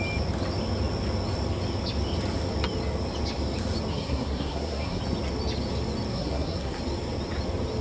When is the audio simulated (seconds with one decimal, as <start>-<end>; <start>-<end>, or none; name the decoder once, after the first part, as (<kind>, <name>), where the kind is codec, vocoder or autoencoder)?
3.9-5.0 (codec, SNAC); 6.1-6.8